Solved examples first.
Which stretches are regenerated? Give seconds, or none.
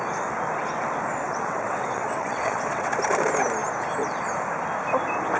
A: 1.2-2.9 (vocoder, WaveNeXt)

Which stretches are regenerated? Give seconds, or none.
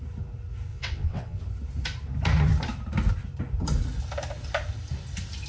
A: 0.7-1.4 (vocoder, WaveNeXt)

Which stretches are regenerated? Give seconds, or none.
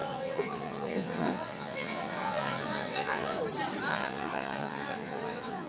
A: 0.0-3.4 (vocoder, WaveNeXt); 3.9-5.7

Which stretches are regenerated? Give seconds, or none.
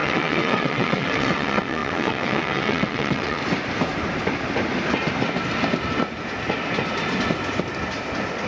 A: 0.0-3.4 (vocoder, WaveNeXt)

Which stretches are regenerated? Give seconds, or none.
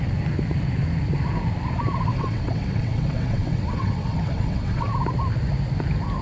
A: 2.1-4.9 (vocoder, WaveNeXt)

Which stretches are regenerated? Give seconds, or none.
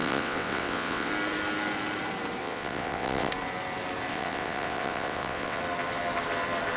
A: 0.0-1.1 (vocoder, WaveNeXt); 2.4-3.3; 4.1-5.6